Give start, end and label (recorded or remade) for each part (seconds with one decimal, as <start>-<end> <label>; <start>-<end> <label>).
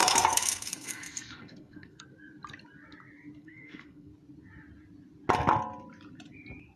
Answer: 0.0-2.0 remade; 2.0-3.4 recorded; 3.4-4.1 remade; 4.1-6.8 recorded